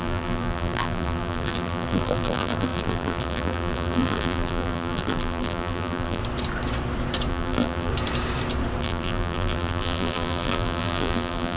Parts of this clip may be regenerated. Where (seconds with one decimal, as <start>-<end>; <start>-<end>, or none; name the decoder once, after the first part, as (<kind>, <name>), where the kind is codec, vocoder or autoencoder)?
0.0-6.2 (vocoder, BigVGAN v2); 7.3-7.9; 8.8-11.6